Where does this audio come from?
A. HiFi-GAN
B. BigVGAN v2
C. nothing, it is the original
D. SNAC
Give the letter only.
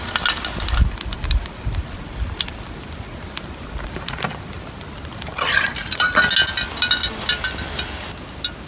C